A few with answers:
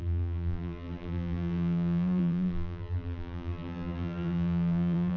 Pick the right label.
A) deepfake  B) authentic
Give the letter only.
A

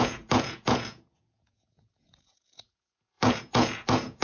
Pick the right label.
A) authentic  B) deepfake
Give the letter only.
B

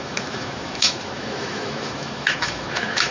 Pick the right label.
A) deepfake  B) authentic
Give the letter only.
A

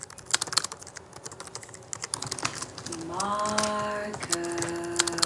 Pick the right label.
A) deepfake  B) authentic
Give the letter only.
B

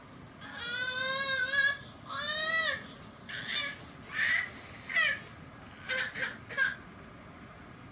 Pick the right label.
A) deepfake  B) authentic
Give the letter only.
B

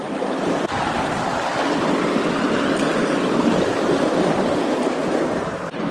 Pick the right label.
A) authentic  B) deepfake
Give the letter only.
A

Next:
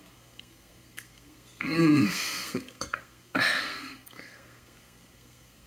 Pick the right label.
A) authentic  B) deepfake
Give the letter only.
B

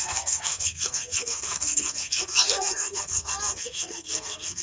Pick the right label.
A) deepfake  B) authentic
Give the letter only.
A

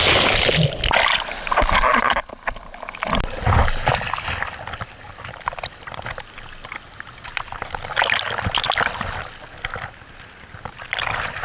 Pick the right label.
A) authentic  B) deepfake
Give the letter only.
A